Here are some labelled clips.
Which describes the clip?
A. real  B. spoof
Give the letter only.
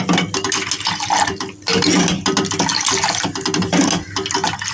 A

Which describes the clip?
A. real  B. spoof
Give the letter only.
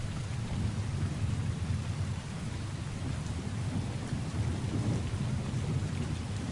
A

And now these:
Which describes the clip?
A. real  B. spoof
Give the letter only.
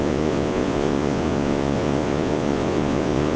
B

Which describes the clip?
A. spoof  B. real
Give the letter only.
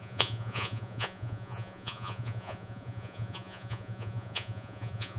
A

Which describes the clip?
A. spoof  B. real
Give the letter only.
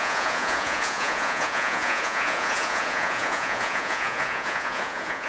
A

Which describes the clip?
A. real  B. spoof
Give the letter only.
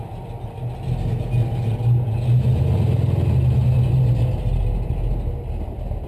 A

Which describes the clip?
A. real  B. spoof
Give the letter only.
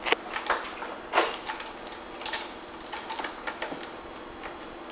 A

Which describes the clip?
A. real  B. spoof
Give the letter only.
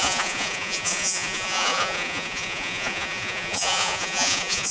B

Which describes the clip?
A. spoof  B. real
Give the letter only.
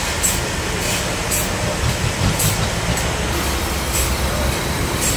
B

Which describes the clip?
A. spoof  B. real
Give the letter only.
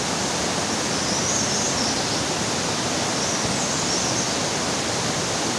B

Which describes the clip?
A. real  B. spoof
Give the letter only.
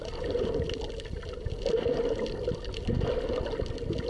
A